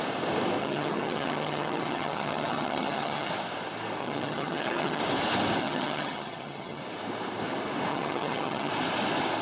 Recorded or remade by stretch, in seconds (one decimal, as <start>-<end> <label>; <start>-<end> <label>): 0.0-0.6 recorded; 0.6-3.3 remade; 3.3-4.0 recorded; 4.0-5.0 remade; 5.0-5.6 recorded; 5.6-6.8 remade; 6.8-7.9 recorded; 7.9-8.7 remade; 8.7-9.4 recorded